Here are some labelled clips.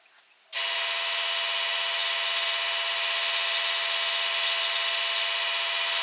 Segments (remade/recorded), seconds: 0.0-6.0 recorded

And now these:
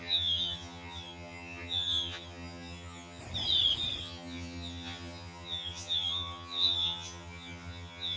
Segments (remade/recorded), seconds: 0.0-3.2 remade; 3.2-4.0 recorded; 4.0-8.2 remade

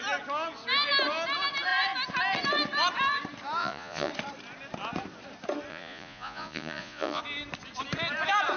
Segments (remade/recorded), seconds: 0.0-3.6 recorded; 3.6-4.1 remade; 4.1-5.7 recorded; 5.7-7.2 remade; 7.2-8.6 recorded

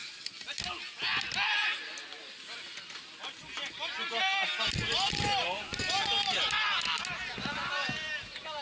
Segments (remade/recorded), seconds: 0.0-8.6 recorded

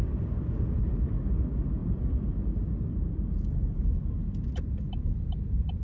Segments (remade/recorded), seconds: 0.0-5.8 recorded

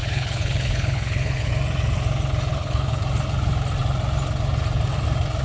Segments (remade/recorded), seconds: 0.0-1.5 remade; 1.5-2.5 recorded; 2.5-3.0 remade; 3.0-5.4 recorded

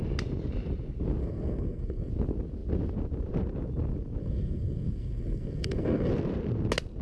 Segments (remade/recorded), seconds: 0.0-1.2 recorded; 1.2-2.1 remade; 2.1-4.2 recorded; 4.2-6.1 remade; 6.1-7.0 recorded

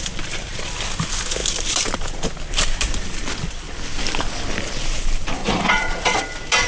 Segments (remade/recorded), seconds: 0.0-5.4 recorded; 5.4-6.2 remade; 6.2-6.7 recorded